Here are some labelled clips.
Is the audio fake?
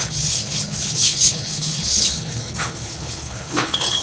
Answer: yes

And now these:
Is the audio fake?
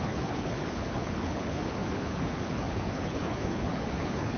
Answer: yes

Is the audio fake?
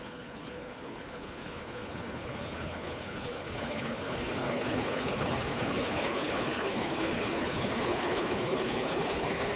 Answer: yes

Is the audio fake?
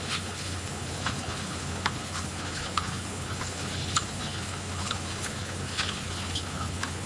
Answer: yes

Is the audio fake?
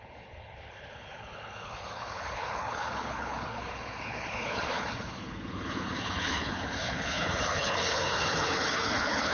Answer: yes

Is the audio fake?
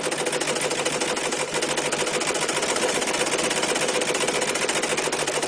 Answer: no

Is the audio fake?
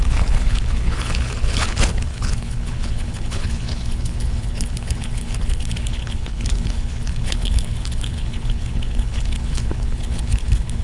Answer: yes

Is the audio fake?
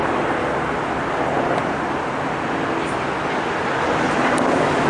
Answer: no